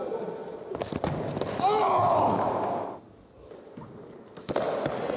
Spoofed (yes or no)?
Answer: no